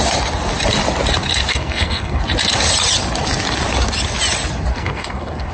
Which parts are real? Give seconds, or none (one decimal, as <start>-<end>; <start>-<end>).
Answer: 0.0-1.5; 2.2-4.7